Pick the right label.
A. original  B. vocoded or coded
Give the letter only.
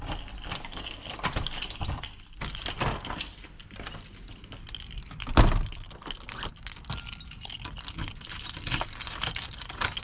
A